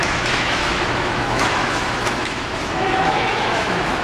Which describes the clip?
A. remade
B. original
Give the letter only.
A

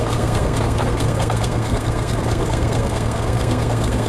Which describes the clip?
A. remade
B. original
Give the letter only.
A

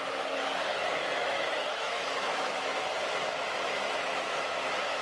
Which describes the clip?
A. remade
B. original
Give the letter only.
A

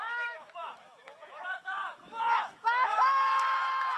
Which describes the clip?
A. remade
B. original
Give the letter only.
A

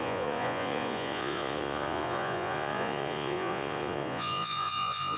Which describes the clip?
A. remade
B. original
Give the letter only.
A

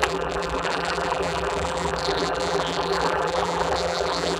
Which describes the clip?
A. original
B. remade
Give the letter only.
B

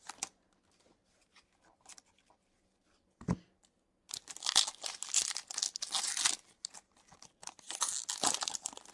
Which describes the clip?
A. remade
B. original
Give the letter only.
B